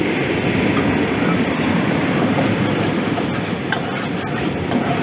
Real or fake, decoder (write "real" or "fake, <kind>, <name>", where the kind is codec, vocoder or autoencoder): real